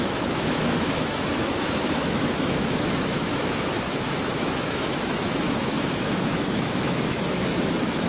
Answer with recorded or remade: remade